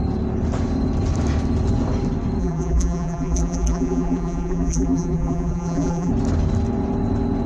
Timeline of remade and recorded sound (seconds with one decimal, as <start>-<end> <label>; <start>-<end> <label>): 0.0-2.4 recorded; 2.4-6.1 remade; 6.1-7.5 recorded

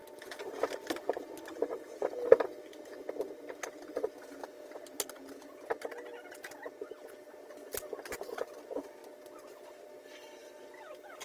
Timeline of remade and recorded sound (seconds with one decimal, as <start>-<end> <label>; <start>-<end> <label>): 0.0-11.2 recorded

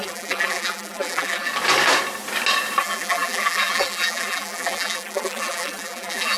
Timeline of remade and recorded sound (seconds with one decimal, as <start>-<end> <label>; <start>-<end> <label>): 0.0-1.5 remade; 1.5-2.8 recorded; 2.8-6.4 remade

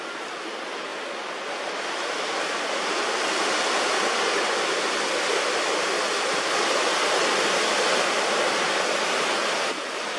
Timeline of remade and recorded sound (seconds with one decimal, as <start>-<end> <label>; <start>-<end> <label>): 0.0-9.4 recorded; 9.4-10.2 remade

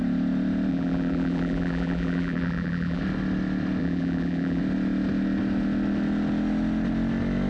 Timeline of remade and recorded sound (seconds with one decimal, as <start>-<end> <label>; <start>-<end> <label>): 0.0-0.7 recorded; 0.7-3.0 remade; 3.0-3.8 recorded; 3.8-4.6 remade; 4.6-7.5 recorded